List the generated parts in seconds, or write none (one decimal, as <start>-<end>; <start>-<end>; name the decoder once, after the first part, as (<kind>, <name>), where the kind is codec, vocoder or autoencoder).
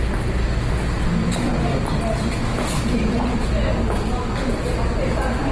none